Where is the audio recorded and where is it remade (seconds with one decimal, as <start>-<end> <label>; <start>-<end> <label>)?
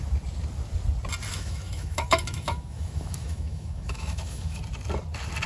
0.0-1.3 recorded; 1.3-4.6 remade; 4.6-5.5 recorded